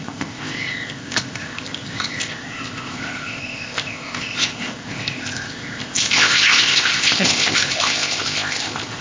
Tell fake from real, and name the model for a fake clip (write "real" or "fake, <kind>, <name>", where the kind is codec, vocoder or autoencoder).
fake, codec, ZipCodec